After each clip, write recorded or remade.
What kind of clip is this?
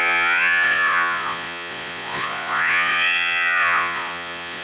remade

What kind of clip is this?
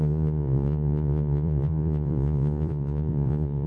remade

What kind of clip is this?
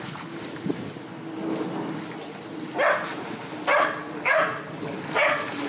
recorded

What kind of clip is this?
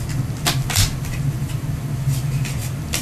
recorded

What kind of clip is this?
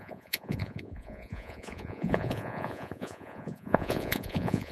remade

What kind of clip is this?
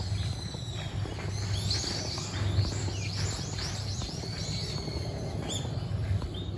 recorded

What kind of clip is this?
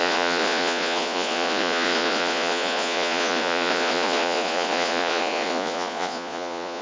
remade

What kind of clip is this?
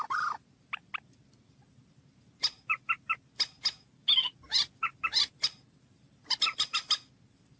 recorded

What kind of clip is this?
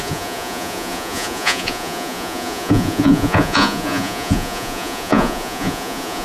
remade